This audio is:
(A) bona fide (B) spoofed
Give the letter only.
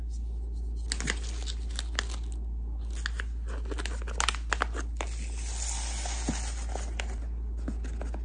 A